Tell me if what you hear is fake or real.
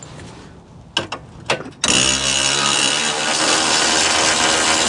real